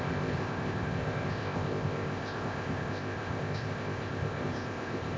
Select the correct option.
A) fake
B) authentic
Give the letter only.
A